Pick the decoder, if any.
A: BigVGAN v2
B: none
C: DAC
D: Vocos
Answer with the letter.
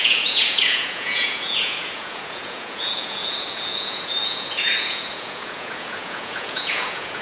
D